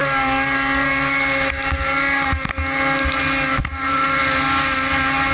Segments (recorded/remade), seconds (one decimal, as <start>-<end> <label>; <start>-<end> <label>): 0.0-3.6 recorded; 3.6-4.2 remade; 4.2-5.3 recorded